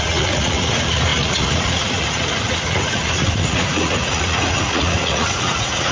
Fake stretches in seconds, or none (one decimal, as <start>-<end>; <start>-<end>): 0.0-5.9